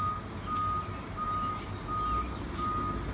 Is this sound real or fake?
real